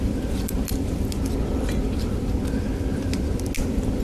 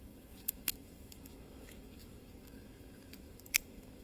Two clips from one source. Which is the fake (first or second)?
second